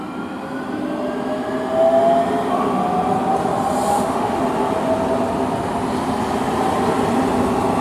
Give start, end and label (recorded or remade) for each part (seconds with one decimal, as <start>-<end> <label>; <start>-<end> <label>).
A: 0.0-3.9 recorded; 3.9-4.4 remade; 4.4-7.8 recorded